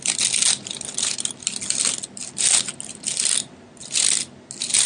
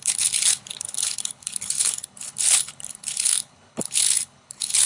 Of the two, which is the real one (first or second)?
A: first